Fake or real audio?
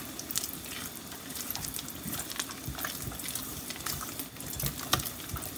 real